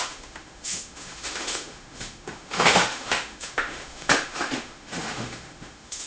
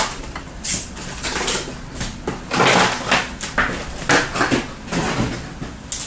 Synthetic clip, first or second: first